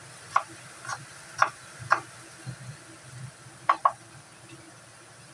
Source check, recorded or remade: recorded